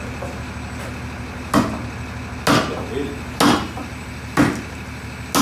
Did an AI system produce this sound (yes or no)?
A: no